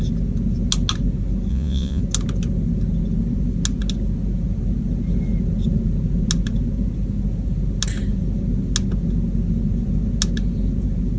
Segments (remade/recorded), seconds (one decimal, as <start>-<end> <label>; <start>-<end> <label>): 0.0-1.5 recorded; 1.5-2.0 remade; 2.0-11.2 recorded